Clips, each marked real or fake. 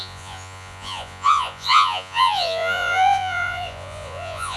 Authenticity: fake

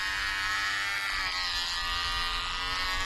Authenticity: real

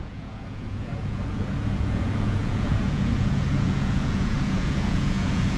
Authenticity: fake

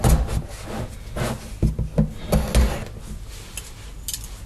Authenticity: real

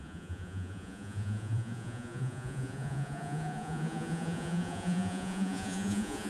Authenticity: fake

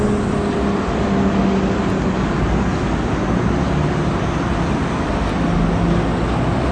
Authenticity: real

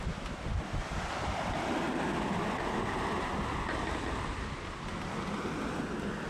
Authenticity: real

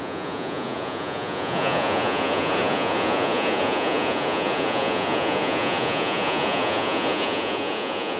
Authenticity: fake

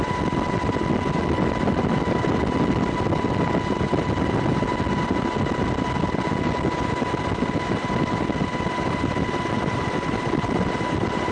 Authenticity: real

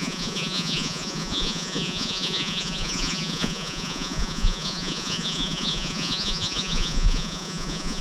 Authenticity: fake